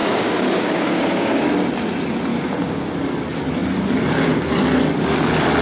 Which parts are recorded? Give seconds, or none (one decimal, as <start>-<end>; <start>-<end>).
1.4-2.3; 2.9-5.6